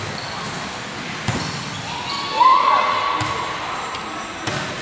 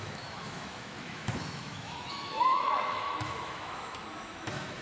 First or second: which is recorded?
first